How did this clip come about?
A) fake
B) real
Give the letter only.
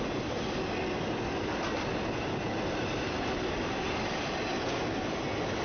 B